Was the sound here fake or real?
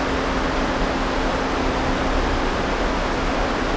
real